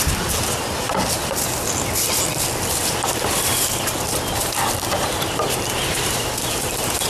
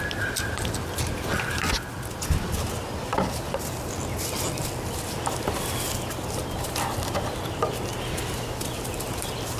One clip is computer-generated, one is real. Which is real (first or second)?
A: second